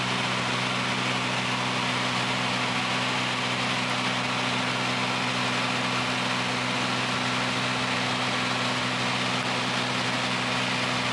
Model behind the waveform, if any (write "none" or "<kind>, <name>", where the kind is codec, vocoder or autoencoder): none